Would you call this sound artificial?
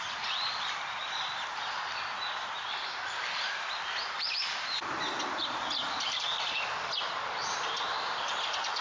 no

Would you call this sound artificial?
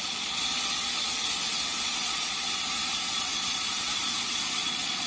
yes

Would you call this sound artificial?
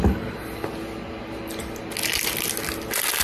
no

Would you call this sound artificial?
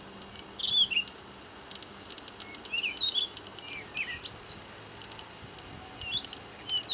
no